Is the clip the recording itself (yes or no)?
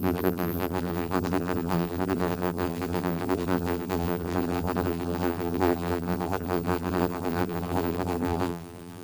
no